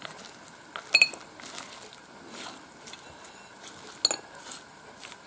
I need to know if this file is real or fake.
real